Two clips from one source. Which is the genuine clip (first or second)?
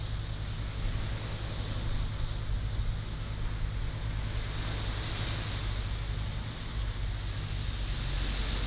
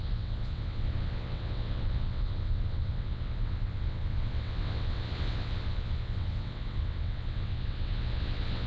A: first